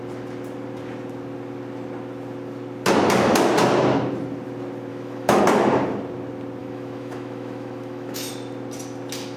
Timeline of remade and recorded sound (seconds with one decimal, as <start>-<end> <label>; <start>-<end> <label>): 0.0-4.9 recorded; 4.9-5.4 remade; 5.4-6.6 recorded; 6.6-8.3 remade; 8.3-9.4 recorded